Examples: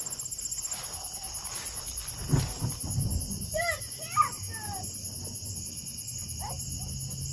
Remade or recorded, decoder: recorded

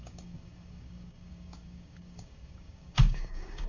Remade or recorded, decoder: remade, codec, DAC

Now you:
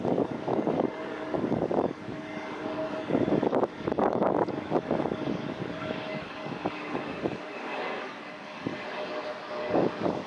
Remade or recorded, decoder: remade, codec, DAC